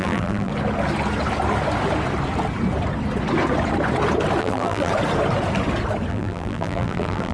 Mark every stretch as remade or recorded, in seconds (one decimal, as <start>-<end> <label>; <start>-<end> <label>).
0.0-0.5 remade; 0.5-4.4 recorded; 4.4-4.9 remade; 4.9-6.1 recorded; 6.1-7.3 remade